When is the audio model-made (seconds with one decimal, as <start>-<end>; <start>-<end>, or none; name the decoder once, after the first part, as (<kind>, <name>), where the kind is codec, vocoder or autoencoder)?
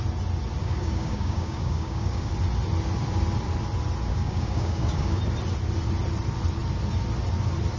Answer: 0.6-2.3 (codec, DAC); 4.1-5.2